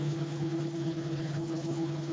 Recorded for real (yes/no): no